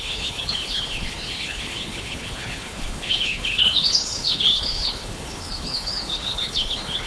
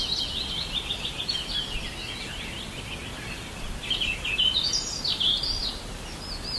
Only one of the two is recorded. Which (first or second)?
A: second